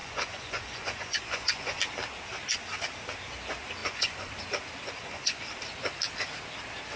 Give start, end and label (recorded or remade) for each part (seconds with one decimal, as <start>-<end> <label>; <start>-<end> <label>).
0.0-1.8 remade; 1.8-3.8 recorded; 3.8-4.3 remade; 4.3-5.0 recorded; 5.0-5.5 remade; 5.5-7.0 recorded